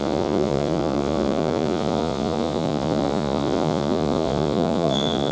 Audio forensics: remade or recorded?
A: remade